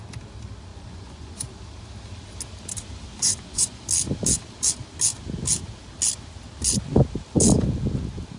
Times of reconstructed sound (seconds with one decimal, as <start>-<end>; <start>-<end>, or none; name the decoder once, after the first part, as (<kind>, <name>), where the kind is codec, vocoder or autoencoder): 0.7-1.5 (vocoder, Vocos); 3.1-3.8